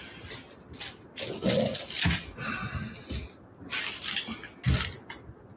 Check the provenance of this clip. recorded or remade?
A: recorded